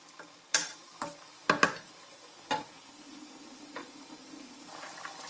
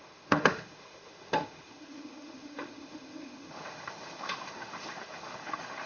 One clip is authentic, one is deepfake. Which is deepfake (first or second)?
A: second